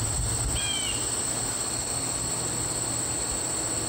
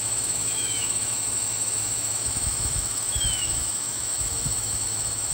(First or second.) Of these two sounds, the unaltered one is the first